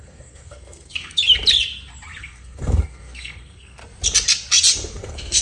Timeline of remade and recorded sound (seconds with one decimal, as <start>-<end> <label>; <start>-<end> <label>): 0.0-1.2 remade; 1.2-2.2 recorded; 2.2-3.8 remade; 3.8-5.0 recorded; 5.0-5.4 remade